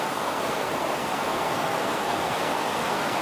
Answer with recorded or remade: remade